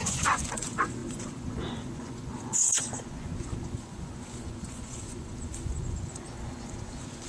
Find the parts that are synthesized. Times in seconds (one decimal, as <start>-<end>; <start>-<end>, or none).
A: 0.0-7.3